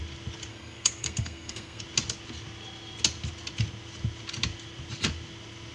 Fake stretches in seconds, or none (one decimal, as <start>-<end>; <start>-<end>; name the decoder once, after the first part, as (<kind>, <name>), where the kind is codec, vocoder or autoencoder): 0.5-1.8 (codec, SNAC)